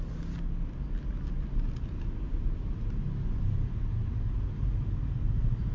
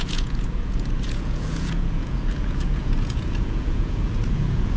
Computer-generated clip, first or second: second